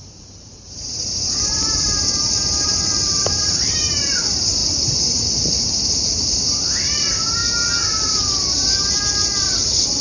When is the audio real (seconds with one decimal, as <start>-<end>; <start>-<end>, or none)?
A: 7.4-8.2

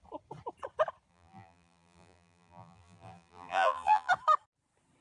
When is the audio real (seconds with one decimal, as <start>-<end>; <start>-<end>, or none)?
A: 0.0-1.1; 4.1-5.0

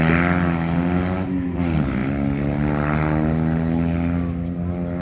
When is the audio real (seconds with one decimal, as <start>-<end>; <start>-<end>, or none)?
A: 0.0-5.0